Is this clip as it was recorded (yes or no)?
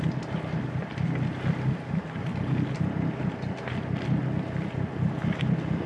yes